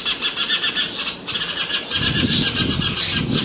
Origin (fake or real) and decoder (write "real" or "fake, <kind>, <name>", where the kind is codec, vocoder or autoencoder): real